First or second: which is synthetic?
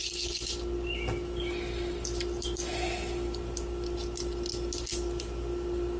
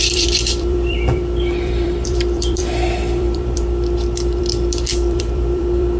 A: second